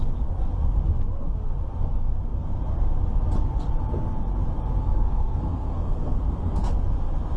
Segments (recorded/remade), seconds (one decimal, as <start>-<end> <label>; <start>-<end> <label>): 0.0-4.8 recorded; 4.8-6.7 remade; 6.7-7.4 recorded